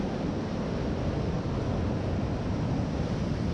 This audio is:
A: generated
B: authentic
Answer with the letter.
B